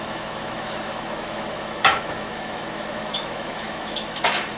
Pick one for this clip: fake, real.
fake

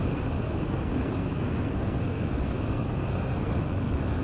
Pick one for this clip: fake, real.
fake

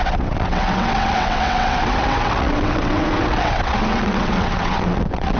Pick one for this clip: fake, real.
fake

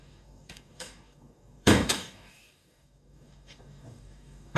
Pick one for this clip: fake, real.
fake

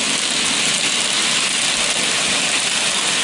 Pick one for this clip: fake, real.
real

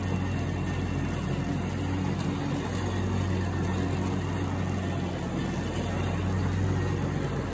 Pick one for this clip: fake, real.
real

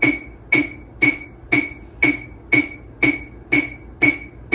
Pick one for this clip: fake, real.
real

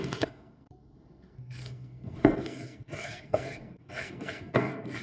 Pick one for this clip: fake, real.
fake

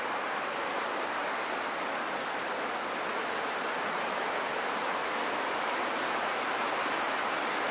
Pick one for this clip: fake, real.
real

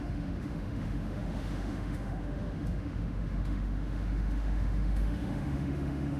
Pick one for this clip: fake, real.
fake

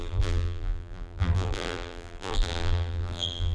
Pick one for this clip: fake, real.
fake